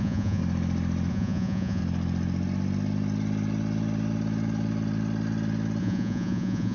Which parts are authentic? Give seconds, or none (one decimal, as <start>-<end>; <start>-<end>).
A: 0.4-1.1; 1.8-5.8